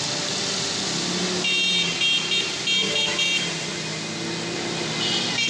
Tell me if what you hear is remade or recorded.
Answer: recorded